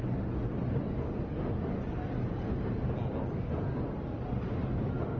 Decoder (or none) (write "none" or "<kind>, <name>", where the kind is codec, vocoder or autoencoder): none